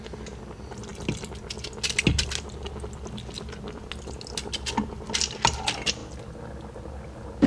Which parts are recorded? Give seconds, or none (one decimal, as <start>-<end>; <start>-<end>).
0.0-7.5